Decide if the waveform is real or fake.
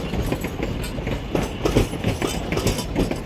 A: real